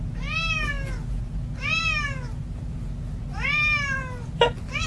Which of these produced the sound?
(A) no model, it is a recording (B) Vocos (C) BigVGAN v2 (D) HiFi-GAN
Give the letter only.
A